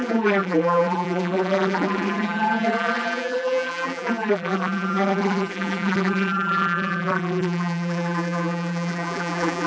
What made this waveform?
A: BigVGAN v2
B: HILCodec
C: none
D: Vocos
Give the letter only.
A